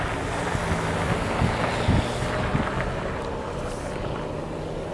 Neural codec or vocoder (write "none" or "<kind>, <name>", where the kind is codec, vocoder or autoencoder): none